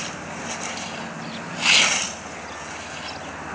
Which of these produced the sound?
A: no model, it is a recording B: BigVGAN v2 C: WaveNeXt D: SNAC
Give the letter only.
A